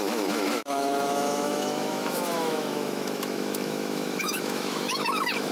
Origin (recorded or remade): remade